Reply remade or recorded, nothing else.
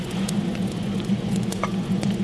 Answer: remade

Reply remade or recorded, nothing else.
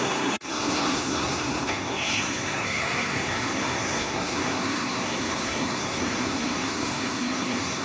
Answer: remade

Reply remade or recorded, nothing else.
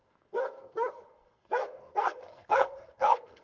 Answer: remade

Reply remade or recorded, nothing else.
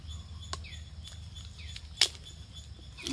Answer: recorded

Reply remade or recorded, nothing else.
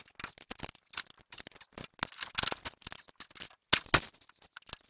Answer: recorded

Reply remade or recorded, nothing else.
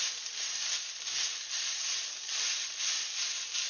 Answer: recorded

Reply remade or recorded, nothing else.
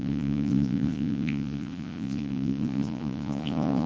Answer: remade